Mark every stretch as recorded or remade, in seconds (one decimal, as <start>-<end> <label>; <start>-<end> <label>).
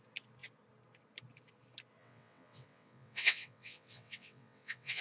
0.0-2.0 recorded; 2.0-5.0 remade